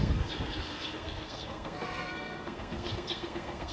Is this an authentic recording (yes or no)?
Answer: no